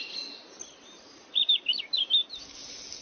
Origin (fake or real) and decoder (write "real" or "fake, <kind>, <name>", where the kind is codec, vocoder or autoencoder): real